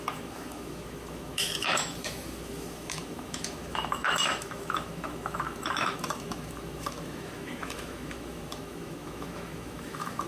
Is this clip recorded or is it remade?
remade